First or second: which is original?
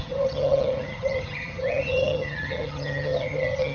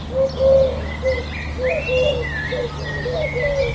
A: second